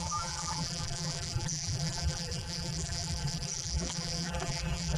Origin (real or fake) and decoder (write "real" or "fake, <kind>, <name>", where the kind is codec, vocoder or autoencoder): fake, vocoder, BigVGAN v2